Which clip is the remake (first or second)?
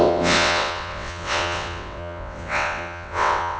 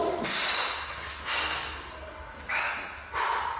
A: first